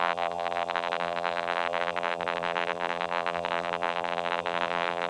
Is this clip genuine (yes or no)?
no